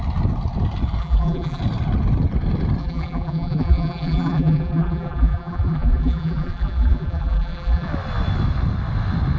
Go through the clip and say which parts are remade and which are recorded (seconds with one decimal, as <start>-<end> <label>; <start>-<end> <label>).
0.0-1.0 recorded; 1.0-1.6 remade; 1.6-2.8 recorded; 2.8-7.9 remade; 7.9-9.4 recorded